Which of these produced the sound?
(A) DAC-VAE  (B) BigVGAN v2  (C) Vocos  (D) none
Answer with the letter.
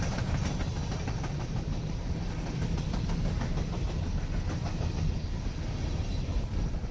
D